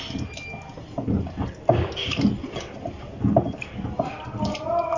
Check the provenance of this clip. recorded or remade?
recorded